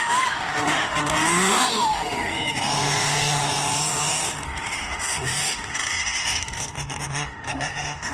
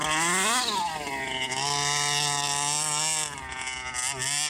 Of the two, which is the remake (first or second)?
first